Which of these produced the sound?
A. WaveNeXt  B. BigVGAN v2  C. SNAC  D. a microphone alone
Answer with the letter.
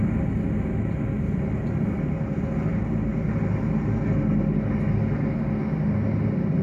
D